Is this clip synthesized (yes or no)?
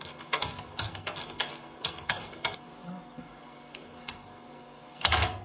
yes